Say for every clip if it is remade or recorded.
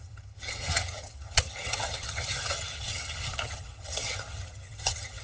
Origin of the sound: remade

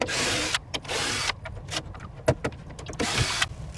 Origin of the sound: recorded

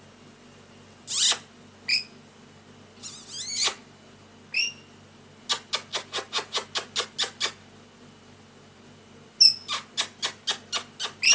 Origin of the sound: recorded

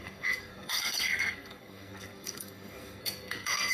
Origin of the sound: remade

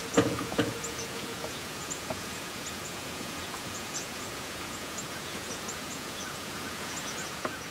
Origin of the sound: remade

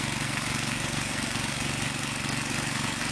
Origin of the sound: remade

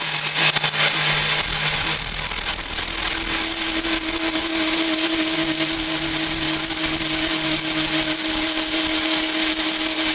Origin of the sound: recorded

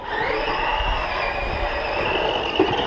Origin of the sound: recorded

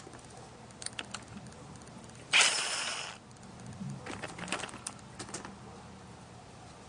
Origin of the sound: recorded